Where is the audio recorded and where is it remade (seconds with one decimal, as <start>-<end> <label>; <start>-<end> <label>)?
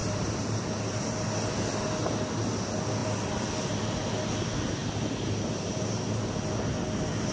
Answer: 0.0-1.0 remade; 1.0-4.8 recorded; 4.8-6.0 remade; 6.0-7.3 recorded